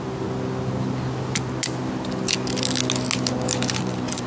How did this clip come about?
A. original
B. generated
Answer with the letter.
A